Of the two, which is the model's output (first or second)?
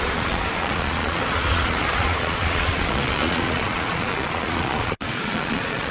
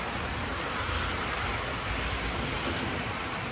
first